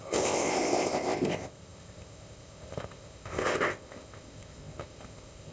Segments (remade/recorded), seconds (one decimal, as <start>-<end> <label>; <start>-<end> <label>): 0.0-5.5 remade